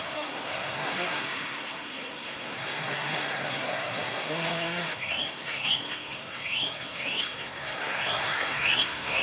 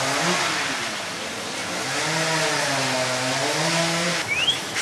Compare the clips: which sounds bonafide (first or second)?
second